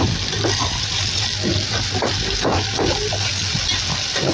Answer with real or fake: real